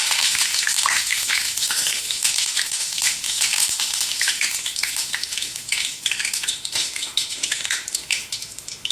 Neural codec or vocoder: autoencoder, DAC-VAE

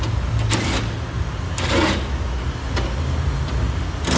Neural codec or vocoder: none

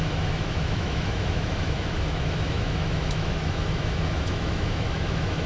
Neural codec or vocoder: autoencoder, DAC-VAE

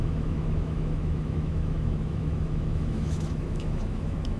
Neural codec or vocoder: autoencoder, DAC-VAE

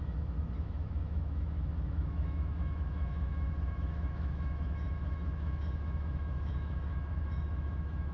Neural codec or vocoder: autoencoder, DAC-VAE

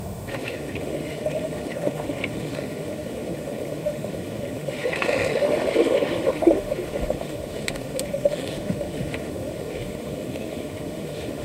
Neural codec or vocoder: autoencoder, DAC-VAE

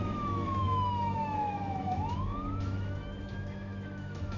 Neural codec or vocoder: autoencoder, DAC-VAE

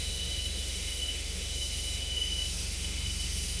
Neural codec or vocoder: autoencoder, DAC-VAE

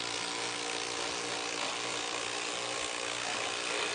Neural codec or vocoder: none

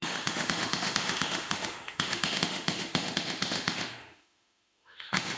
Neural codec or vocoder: autoencoder, DAC-VAE